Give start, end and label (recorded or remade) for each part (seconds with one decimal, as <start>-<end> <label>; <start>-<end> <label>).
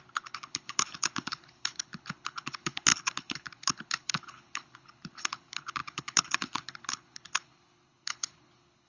0.0-8.9 remade